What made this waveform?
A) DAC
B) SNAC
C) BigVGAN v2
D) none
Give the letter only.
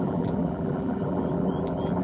C